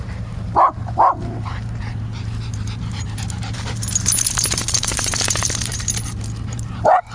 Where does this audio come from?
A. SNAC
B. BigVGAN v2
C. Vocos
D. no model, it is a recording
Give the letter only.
B